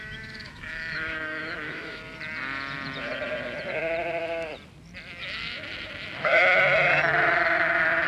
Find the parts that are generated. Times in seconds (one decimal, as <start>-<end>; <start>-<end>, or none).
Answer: 0.0-2.0; 5.2-6.6